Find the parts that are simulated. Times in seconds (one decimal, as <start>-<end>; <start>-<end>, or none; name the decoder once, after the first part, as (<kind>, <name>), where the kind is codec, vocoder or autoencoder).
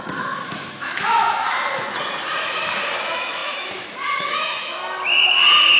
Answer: 0.0-1.2 (autoencoder, DAC-VAE); 3.0-4.8